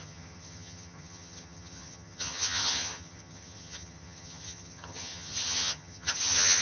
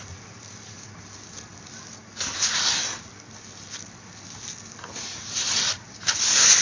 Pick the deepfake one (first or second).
first